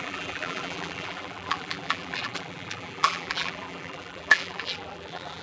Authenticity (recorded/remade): remade